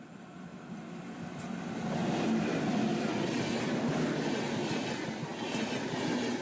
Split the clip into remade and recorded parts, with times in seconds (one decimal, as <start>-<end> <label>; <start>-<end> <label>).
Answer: 0.0-6.4 recorded